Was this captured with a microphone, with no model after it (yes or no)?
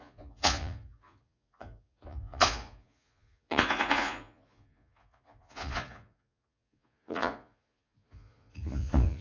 no